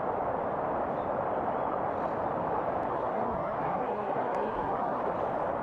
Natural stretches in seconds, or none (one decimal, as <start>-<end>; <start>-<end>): 0.0-2.9; 5.0-5.6